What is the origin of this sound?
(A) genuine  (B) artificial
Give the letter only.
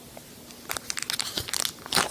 A